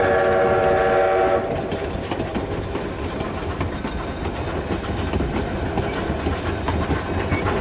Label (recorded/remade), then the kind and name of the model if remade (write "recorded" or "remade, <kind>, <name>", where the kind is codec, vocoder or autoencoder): recorded